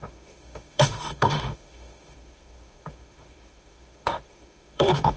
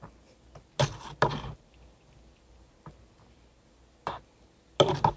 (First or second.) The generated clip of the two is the first